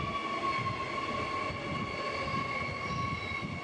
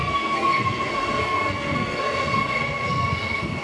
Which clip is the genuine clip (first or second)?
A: first